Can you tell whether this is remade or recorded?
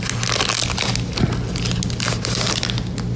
recorded